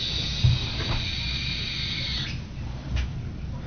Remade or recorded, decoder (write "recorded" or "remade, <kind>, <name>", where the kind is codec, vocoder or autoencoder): recorded